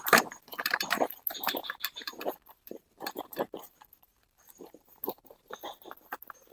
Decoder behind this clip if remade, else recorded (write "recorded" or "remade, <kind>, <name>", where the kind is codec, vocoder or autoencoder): remade, vocoder, BigVGAN v2